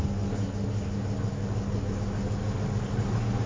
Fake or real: real